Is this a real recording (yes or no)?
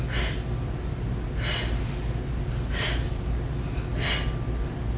yes